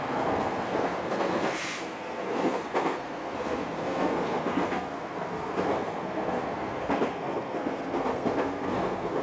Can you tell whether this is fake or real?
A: fake